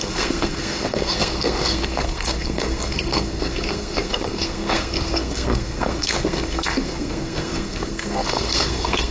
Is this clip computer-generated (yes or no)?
yes